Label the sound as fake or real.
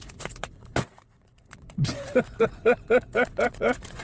fake